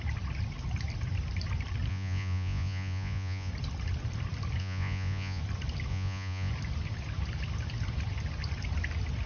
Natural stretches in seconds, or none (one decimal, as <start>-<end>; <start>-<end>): 0.0-1.9; 3.5-4.6; 5.4-5.9; 6.5-9.3